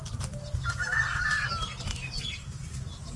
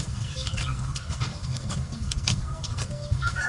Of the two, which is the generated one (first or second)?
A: second